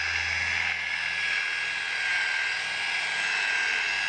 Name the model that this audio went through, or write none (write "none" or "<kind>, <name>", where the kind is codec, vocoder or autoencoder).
none